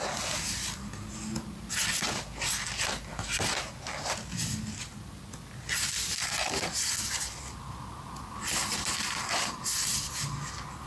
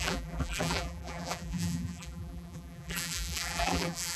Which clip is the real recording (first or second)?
first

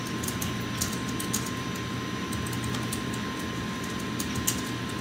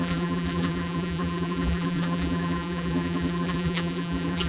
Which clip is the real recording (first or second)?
first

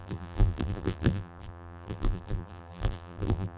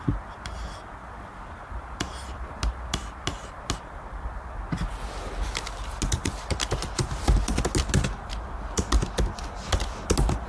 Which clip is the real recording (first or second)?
second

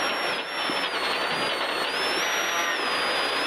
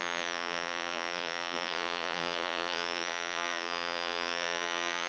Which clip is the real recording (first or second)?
first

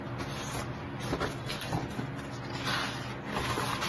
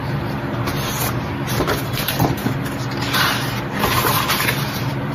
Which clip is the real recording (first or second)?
first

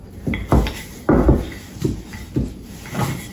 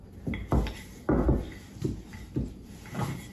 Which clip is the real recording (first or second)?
second